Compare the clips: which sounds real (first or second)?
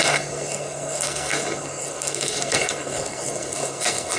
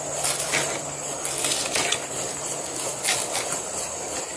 second